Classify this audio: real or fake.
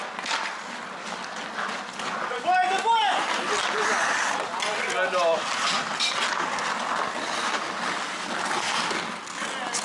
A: real